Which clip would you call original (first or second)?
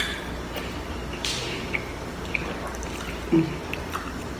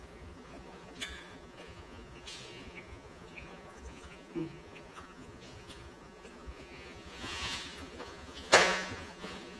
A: first